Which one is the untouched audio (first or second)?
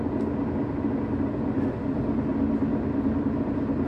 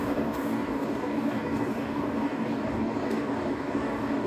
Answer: first